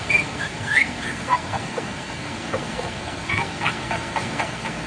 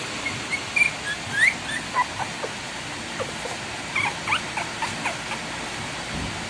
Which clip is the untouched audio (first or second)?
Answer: second